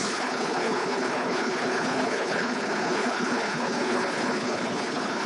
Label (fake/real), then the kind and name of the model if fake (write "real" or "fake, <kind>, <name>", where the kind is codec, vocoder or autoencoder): fake, codec, HILCodec